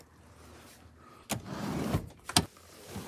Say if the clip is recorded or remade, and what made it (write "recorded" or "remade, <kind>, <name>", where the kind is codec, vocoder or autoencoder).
recorded